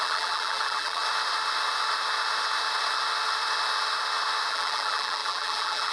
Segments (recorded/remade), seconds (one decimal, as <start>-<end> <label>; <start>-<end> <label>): 0.0-1.0 remade; 1.0-4.5 recorded; 4.5-5.9 remade